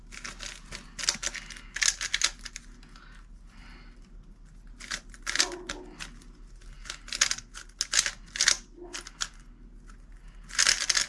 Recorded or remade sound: recorded